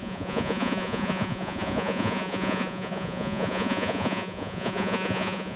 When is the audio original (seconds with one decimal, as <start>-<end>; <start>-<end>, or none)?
none